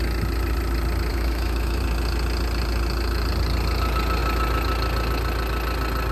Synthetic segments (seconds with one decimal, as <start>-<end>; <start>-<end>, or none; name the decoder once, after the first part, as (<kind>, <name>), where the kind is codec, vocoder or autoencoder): 1.1-1.8 (autoencoder, DAC-VAE)